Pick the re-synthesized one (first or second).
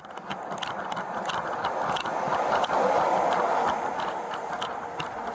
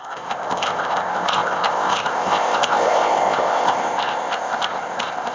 second